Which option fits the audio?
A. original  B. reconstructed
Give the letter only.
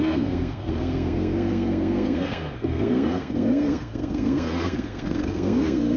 B